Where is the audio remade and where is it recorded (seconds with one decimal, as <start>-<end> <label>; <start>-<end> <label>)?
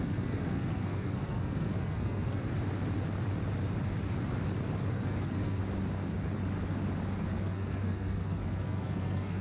0.0-2.5 remade; 2.5-4.9 recorded; 4.9-5.6 remade; 5.6-7.2 recorded; 7.2-9.4 remade